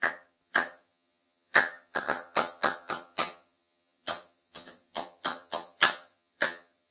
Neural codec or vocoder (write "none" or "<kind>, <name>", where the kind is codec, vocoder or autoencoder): vocoder, HiFi-GAN